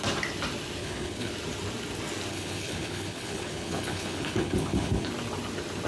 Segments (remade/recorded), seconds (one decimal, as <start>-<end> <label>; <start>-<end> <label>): 0.0-0.8 recorded; 0.8-1.3 remade; 1.3-2.3 recorded; 2.3-5.1 remade; 5.1-5.9 recorded